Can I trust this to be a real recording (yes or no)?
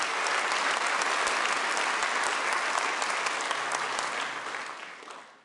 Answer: yes